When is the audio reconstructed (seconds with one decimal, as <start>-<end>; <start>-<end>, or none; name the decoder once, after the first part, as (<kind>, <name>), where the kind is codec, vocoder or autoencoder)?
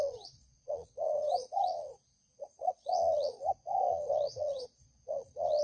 0.0-5.6 (vocoder, Vocos)